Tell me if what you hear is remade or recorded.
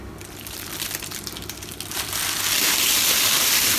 recorded